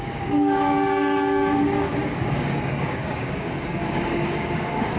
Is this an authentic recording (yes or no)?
no